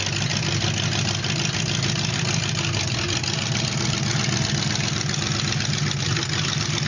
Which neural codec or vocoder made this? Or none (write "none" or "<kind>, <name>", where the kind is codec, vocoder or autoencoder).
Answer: none